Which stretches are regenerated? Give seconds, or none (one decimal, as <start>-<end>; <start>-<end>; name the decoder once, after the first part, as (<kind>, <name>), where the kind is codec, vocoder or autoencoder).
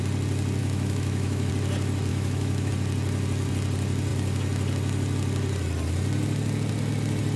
0.6-1.5 (autoencoder, DAC-VAE); 2.1-2.7